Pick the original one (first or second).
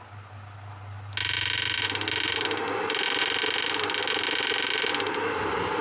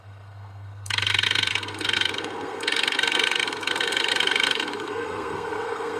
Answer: first